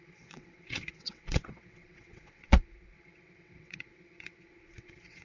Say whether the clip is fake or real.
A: fake